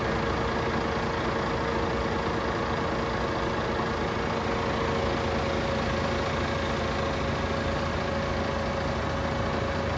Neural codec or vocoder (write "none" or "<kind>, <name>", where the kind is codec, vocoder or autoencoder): none